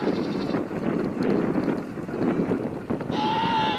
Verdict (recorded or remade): remade